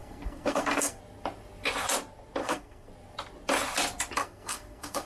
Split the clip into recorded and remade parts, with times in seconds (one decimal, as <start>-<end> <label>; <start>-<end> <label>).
0.0-1.0 remade; 1.0-2.4 recorded; 2.4-2.9 remade; 2.9-4.2 recorded; 4.2-5.1 remade